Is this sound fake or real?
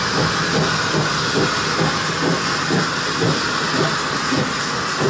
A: real